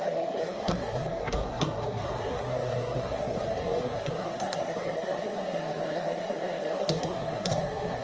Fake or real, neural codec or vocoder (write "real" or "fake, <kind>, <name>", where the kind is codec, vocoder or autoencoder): fake, codec, SNAC